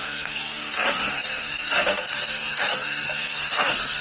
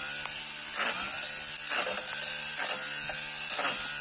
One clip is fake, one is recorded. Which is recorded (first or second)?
second